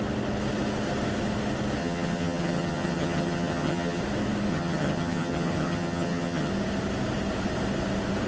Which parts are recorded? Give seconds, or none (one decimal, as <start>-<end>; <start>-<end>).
0.0-1.8; 4.0-4.5; 6.5-8.3